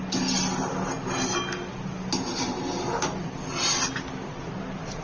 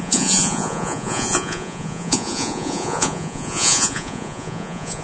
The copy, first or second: second